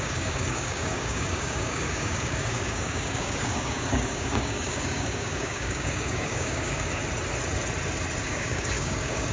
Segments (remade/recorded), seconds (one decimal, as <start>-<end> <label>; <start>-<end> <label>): 0.0-7.0 remade; 7.0-8.2 recorded; 8.2-9.3 remade